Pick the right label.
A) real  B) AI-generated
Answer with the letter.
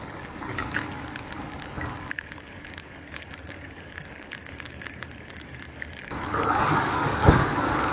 B